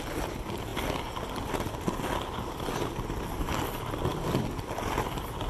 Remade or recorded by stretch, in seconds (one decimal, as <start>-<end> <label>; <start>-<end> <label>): 0.0-5.5 recorded